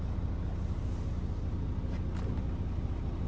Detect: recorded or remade recorded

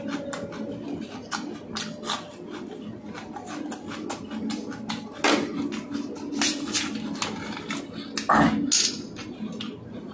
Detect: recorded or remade recorded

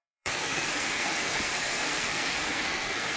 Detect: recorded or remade remade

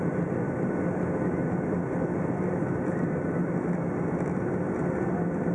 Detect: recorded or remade recorded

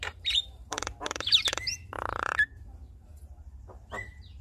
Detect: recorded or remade remade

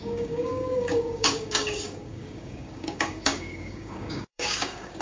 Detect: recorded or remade remade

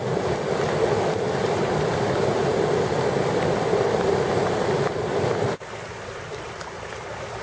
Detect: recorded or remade recorded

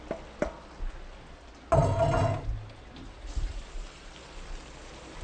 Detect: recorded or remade recorded